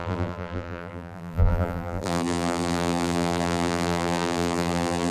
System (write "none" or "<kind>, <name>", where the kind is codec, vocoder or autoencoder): vocoder, BigVGAN v2